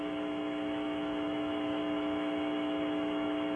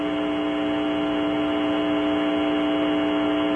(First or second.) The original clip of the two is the second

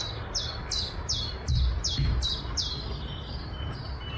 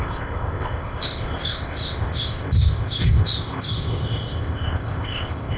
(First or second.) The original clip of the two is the first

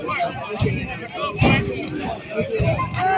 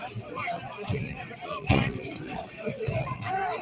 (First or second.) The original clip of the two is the first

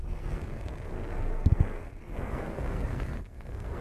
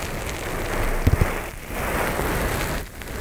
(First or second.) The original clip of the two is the second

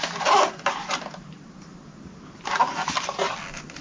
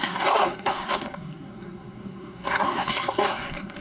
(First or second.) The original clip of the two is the first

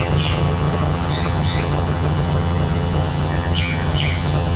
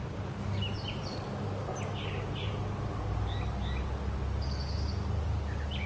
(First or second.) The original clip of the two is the second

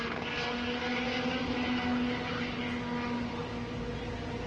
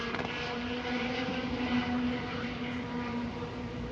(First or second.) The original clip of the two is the first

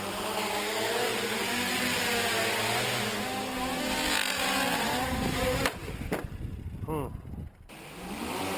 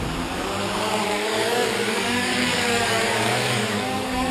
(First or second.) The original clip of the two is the first